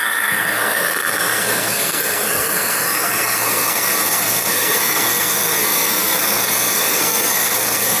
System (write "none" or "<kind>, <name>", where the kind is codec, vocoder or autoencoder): codec, SNAC